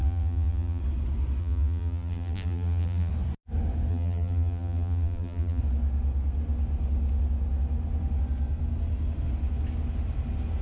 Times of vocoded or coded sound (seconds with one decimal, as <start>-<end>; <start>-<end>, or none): 0.0-0.8; 1.4-3.1; 3.9-5.6